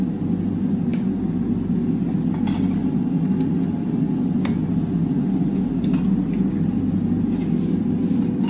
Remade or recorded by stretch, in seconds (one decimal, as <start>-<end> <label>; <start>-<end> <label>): 0.0-8.5 recorded